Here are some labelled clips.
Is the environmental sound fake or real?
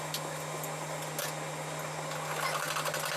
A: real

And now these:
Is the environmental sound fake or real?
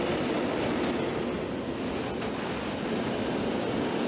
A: real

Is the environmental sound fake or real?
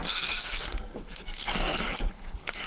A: fake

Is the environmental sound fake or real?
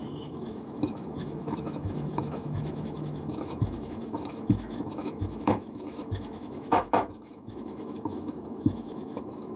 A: fake